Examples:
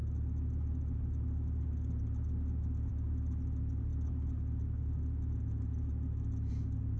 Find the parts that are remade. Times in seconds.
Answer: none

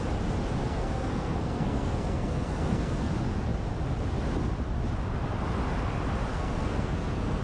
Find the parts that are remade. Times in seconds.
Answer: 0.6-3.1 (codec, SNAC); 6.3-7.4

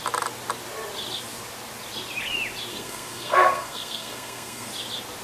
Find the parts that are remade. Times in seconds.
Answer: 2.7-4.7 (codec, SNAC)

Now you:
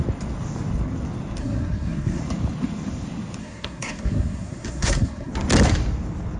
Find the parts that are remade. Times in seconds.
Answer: 1.4-2.2 (codec, SNAC); 3.4-5.3